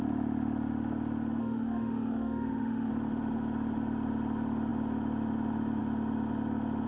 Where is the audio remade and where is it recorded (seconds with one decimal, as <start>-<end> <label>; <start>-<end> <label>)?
0.0-1.4 recorded; 1.4-2.9 remade; 2.9-6.9 recorded